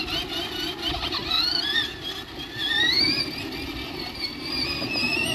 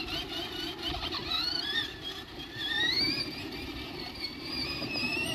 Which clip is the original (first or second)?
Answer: first